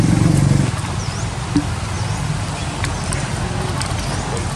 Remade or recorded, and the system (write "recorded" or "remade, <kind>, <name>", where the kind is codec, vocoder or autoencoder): recorded